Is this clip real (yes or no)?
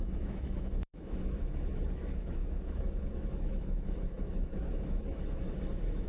no